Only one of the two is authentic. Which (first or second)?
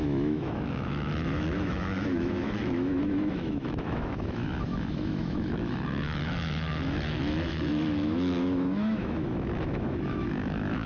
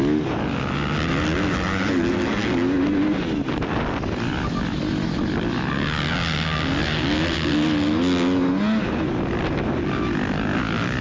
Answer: second